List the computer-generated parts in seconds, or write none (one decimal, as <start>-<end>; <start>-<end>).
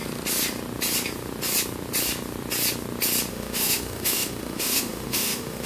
3.3-5.7